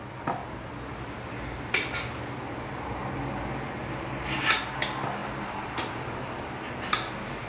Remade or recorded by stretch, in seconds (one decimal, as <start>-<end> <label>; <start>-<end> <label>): 0.0-0.4 recorded; 0.4-3.0 remade; 3.0-5.2 recorded; 5.2-6.0 remade; 6.0-7.5 recorded